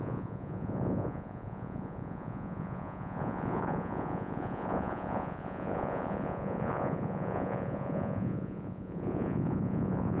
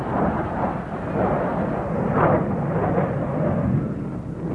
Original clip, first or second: second